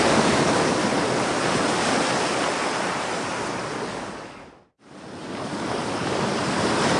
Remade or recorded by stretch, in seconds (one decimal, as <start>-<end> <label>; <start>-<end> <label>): 0.0-0.8 remade; 0.8-3.9 recorded; 3.9-4.4 remade; 4.4-5.5 recorded; 5.5-6.3 remade; 6.3-7.0 recorded